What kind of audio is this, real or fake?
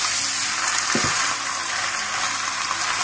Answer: real